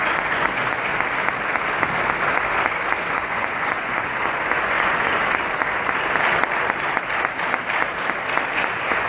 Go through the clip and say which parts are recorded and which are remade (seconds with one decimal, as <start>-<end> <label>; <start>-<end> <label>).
0.0-0.9 remade; 0.9-3.1 recorded; 3.1-5.2 remade; 5.2-8.5 recorded; 8.5-9.1 remade